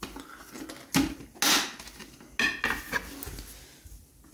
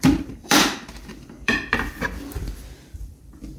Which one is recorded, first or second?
first